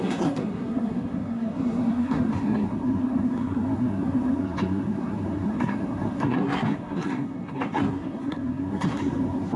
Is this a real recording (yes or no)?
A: no